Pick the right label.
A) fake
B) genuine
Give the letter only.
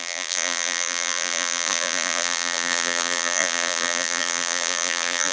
A